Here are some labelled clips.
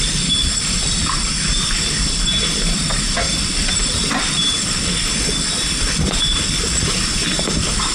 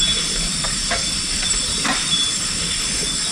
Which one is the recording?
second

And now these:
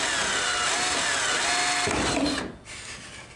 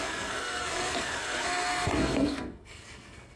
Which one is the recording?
first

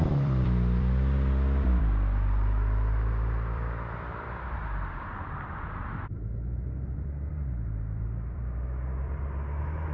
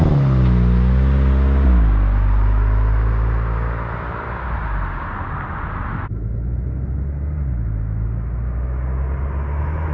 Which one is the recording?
second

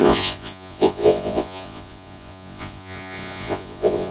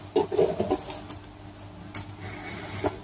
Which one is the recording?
second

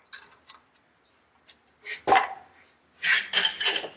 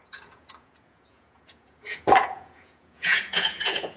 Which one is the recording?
first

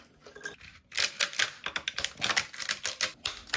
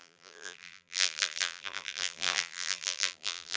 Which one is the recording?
first